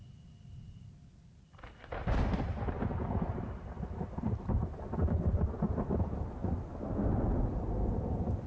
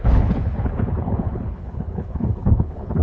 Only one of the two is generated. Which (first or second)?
second